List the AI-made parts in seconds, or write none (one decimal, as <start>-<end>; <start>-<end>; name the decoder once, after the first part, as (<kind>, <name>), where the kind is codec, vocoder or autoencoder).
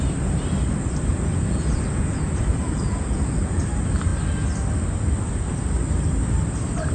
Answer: 1.1-3.6 (vocoder, Vocos)